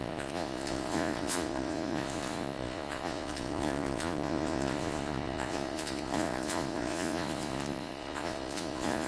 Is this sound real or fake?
fake